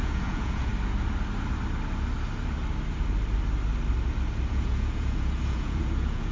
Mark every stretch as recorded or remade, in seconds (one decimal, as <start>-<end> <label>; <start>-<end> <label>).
0.0-0.7 remade; 0.7-4.5 recorded; 4.5-6.3 remade